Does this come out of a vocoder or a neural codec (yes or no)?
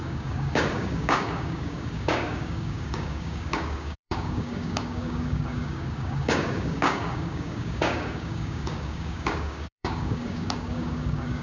yes